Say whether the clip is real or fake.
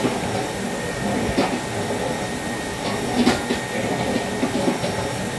real